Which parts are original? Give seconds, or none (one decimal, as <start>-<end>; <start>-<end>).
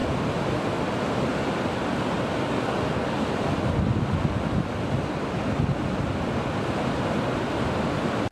0.0-8.3